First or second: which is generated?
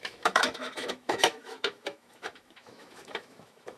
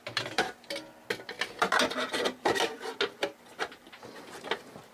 first